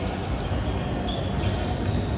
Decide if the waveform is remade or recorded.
recorded